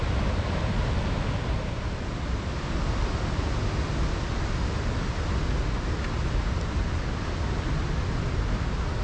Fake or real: real